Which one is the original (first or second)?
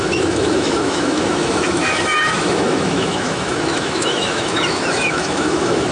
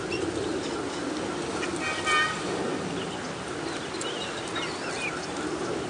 second